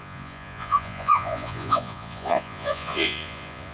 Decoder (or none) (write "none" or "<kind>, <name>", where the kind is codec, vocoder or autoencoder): vocoder, Vocos